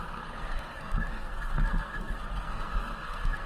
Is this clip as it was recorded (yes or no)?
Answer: no